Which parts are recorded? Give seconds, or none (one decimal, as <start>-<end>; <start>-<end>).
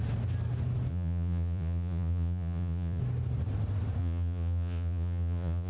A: 0.0-0.9; 3.0-4.0